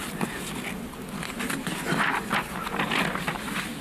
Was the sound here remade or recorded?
recorded